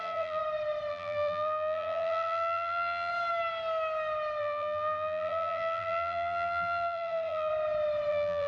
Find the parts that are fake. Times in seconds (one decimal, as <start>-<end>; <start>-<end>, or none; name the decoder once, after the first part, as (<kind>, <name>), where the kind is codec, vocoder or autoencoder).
0.0-0.4 (vocoder, BigVGAN v2); 0.9-3.1; 4.4-7.5; 8.1-8.5